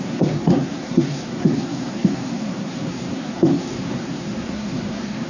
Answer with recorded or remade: remade